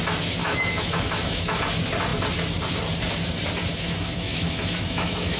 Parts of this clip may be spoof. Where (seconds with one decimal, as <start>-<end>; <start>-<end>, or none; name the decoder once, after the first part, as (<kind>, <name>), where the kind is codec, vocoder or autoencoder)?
0.4-1.6 (autoencoder, DAC-VAE); 3.7-5.4